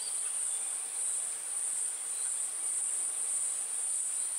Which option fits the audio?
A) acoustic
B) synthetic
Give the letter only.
B